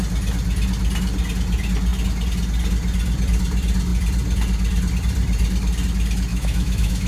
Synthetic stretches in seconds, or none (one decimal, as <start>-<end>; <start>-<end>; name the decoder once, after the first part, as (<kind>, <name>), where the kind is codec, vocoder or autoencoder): 6.3-7.1 (autoencoder, DAC-VAE)